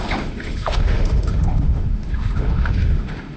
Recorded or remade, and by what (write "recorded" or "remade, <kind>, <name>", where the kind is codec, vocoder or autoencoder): remade, autoencoder, DAC-VAE